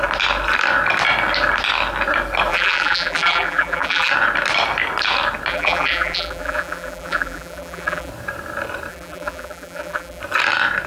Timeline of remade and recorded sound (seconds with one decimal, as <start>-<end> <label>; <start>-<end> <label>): 0.0-2.5 recorded; 2.5-4.1 remade; 4.1-5.5 recorded; 5.5-8.1 remade; 8.1-8.9 recorded; 8.9-10.2 remade; 10.2-10.9 recorded